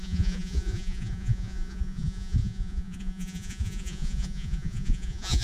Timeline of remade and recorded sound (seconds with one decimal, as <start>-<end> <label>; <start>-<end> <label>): 0.0-5.4 remade